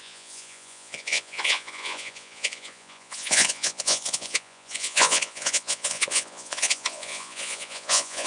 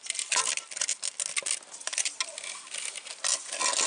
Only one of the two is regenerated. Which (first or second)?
first